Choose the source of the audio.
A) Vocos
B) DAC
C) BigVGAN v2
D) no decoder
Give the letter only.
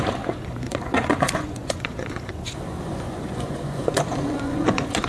A